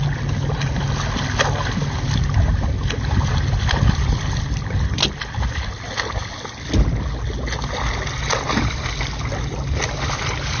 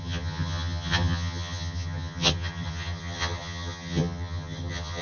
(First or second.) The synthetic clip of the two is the second